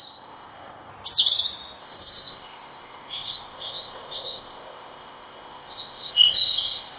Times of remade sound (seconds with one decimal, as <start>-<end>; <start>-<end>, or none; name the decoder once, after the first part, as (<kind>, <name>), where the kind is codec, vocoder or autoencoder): 0.0-0.9 (codec, ZipCodec); 1.8-7.0